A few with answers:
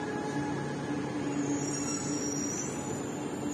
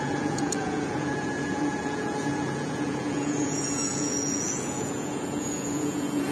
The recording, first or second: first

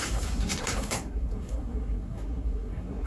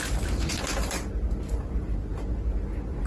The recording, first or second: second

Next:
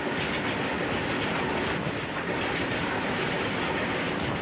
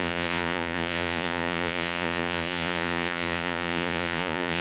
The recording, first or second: first